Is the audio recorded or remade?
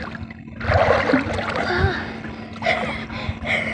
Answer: recorded